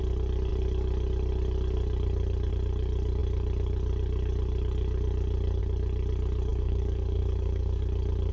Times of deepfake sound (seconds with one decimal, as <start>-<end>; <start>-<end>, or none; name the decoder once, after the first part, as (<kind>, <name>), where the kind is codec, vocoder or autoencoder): 6.5-7.8 (codec, DAC)